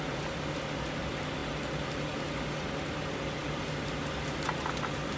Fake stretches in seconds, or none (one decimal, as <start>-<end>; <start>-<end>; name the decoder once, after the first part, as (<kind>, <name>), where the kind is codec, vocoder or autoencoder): none